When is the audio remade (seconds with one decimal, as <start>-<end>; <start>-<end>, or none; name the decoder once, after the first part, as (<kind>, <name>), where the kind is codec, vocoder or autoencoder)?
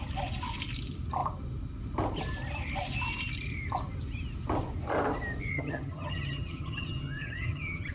5.5-7.9 (vocoder, HiFi-GAN)